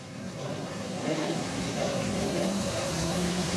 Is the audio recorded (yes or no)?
no